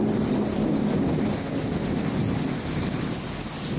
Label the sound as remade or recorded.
recorded